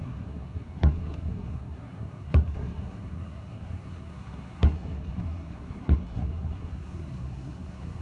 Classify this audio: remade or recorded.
remade